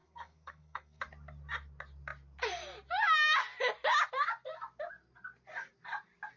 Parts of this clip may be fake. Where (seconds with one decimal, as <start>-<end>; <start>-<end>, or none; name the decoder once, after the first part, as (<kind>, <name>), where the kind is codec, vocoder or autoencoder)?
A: 0.0-1.0 (codec, SNAC)